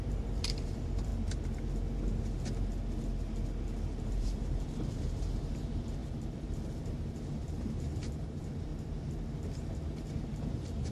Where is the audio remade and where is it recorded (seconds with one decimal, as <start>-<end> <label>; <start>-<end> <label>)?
0.0-1.1 remade; 1.1-4.0 recorded; 4.0-8.7 remade; 8.7-10.2 recorded; 10.2-10.9 remade